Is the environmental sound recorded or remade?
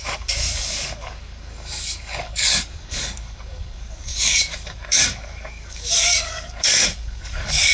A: remade